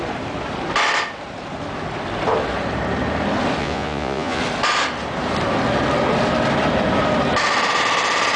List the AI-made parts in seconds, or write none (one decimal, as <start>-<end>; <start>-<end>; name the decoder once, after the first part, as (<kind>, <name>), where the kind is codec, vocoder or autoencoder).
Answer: 3.6-4.4 (vocoder, Vocos)